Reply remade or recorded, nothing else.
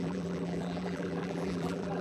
remade